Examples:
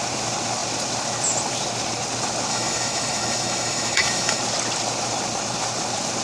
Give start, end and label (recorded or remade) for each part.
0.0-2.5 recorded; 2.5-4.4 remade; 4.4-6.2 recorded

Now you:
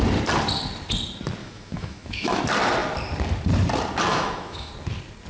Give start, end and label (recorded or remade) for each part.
0.0-1.4 recorded; 1.4-2.4 remade; 2.4-4.1 recorded; 4.1-4.7 remade; 4.7-5.3 recorded

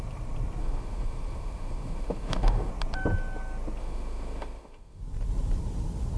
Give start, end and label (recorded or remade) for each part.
0.0-0.6 recorded; 0.6-2.7 remade; 2.7-3.8 recorded; 3.8-5.0 remade; 5.0-6.2 recorded

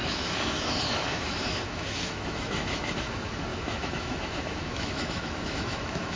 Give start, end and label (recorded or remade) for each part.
0.0-6.2 remade